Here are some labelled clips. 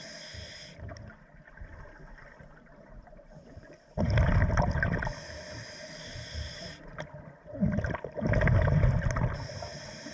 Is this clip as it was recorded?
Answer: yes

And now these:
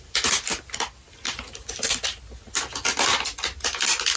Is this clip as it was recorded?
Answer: yes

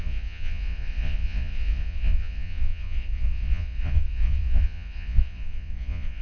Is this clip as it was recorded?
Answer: no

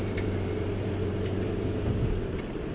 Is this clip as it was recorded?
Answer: no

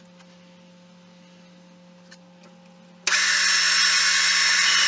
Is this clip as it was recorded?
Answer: yes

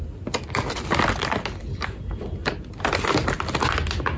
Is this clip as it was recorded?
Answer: yes